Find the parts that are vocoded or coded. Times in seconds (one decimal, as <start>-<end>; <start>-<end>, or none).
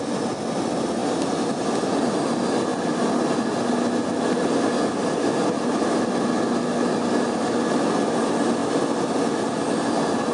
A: none